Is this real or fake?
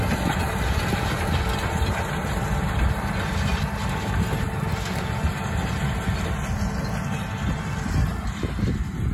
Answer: real